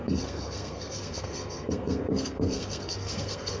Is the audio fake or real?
fake